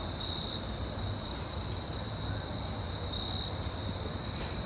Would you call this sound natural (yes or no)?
yes